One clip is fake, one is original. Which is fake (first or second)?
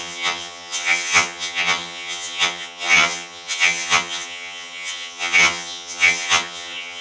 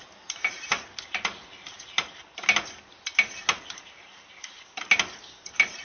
first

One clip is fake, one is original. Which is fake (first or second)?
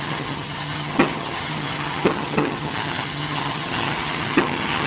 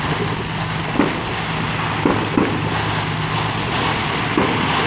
first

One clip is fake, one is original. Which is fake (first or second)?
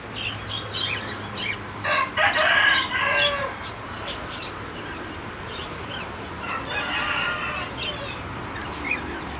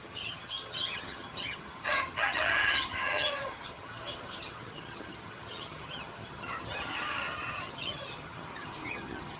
second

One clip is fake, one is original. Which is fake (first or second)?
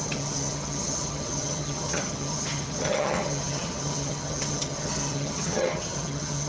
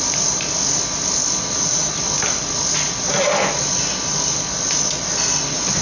first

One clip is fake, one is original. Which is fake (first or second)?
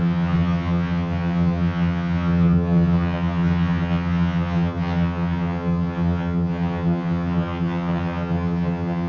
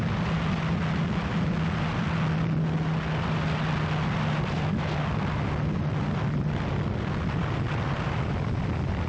first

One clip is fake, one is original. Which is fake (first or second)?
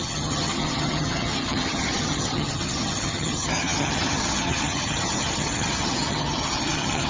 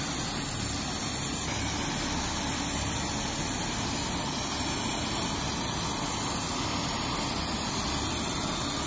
first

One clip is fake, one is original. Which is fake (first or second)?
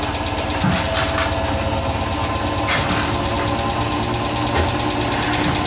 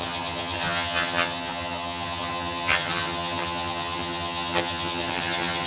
second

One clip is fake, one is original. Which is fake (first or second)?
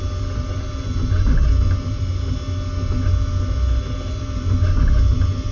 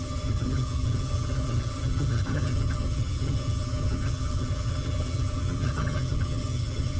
second